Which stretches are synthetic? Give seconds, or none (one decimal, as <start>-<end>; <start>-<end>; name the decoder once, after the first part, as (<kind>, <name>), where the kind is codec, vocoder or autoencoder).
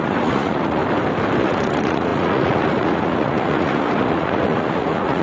0.0-0.8 (vocoder, Vocos); 1.4-5.2